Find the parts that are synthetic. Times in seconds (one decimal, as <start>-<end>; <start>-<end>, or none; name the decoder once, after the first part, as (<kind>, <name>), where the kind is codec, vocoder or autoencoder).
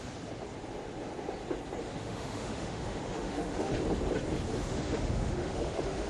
2.0-3.8 (autoencoder, DAC-VAE); 4.6-6.1